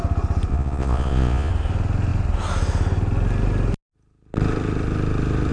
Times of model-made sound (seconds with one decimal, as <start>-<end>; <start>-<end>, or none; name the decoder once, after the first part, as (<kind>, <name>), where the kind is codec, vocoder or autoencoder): 0.5-1.5 (vocoder, Vocos)